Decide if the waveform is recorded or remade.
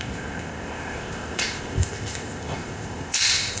remade